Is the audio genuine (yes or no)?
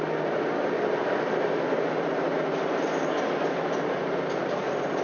yes